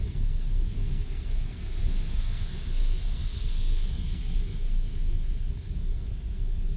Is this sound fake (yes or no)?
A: yes